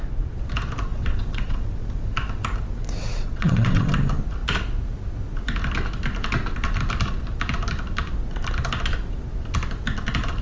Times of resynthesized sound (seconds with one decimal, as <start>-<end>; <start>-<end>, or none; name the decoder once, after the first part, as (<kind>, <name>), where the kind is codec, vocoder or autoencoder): 0.9-1.7 (vocoder, WaveNeXt); 3.0-3.9